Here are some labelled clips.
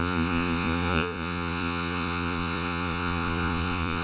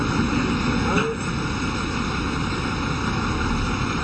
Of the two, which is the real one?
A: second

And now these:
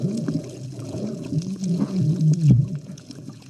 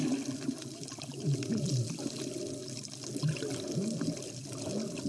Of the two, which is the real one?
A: second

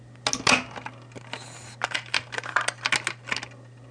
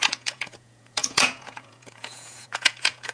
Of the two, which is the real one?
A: first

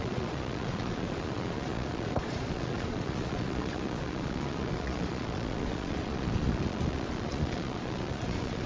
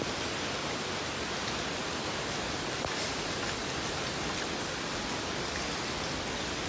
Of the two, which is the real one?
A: second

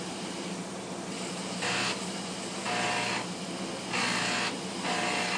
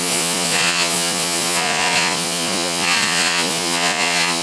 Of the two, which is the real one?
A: first